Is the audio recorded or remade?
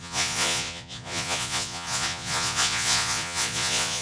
remade